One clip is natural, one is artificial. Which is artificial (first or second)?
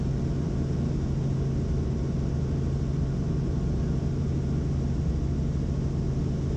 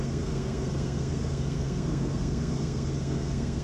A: second